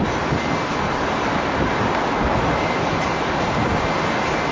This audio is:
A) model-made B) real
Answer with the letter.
B